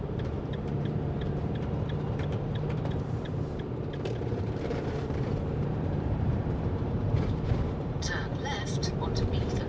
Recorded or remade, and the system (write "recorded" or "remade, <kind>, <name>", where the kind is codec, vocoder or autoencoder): remade, vocoder, BigVGAN v2